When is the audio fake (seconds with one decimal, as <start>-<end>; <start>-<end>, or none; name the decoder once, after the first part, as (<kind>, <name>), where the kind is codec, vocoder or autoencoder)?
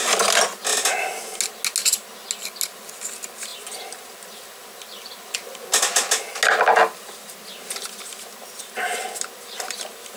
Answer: none